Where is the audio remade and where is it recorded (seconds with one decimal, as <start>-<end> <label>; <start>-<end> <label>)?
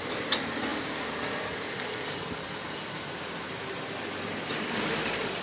0.0-5.4 remade